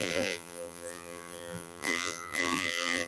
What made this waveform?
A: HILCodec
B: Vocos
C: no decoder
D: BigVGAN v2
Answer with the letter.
D